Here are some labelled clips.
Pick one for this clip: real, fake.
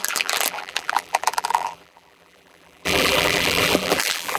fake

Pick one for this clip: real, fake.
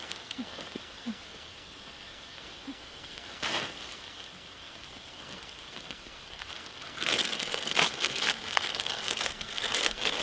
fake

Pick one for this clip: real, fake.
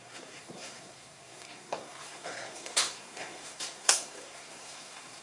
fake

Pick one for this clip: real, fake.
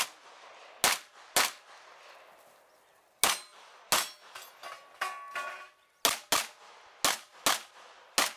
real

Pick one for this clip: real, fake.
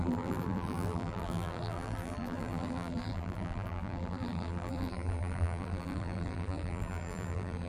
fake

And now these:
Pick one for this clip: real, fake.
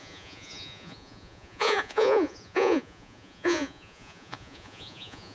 fake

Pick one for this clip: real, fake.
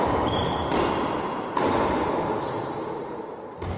real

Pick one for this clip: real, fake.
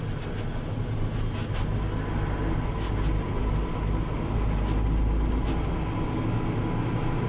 real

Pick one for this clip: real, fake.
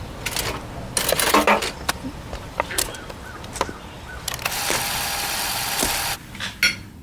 real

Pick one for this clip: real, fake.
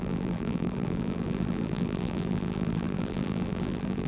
fake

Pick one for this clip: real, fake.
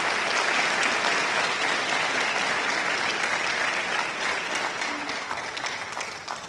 real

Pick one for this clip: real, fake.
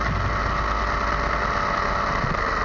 real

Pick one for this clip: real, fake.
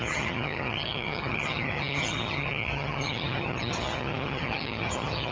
fake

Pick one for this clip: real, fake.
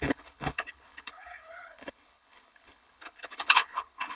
fake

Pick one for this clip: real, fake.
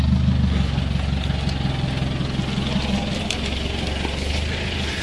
real